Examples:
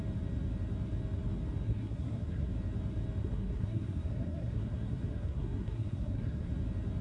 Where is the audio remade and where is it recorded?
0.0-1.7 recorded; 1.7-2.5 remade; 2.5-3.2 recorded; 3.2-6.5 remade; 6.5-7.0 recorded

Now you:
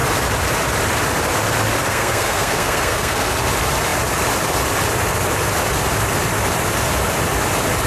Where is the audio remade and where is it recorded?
0.0-1.9 recorded; 1.9-3.4 remade; 3.4-7.9 recorded

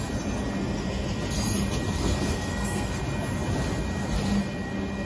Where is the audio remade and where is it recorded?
0.0-2.3 recorded; 2.3-3.0 remade; 3.0-5.1 recorded

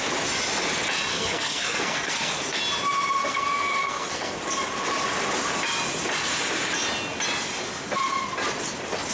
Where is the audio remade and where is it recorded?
0.0-1.1 recorded; 1.1-2.6 remade; 2.6-3.2 recorded; 3.2-4.4 remade; 4.4-9.1 recorded